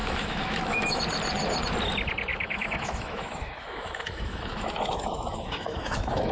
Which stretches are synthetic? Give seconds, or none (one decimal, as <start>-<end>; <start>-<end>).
0.0-1.0; 2.3-6.3